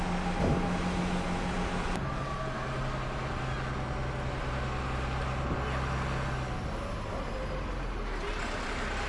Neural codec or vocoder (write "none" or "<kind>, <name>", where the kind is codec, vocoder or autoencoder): none